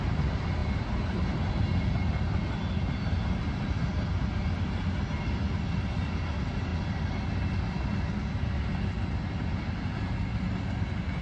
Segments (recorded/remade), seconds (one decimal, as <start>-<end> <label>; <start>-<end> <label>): 0.0-0.6 recorded; 0.6-1.5 remade; 1.5-11.2 recorded